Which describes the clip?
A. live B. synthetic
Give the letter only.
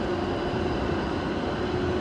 A